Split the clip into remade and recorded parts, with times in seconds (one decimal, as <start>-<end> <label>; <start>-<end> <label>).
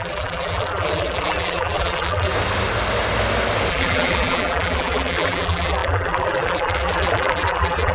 0.0-2.3 remade; 2.3-3.7 recorded; 3.7-7.9 remade